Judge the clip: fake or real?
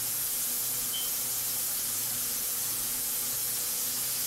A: fake